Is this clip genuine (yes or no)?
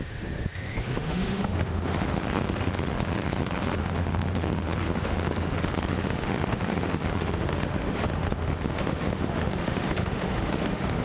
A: no